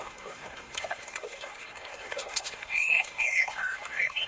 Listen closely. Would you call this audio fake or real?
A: fake